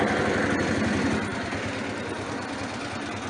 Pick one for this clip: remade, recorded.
recorded